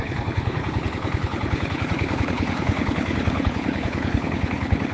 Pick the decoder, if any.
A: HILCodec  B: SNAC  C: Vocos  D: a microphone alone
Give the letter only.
A